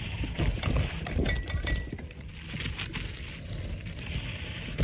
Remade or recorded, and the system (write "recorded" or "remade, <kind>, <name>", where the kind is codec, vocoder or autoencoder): recorded